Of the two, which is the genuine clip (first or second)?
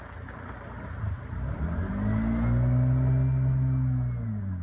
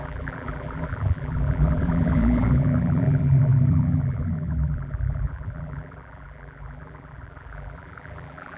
first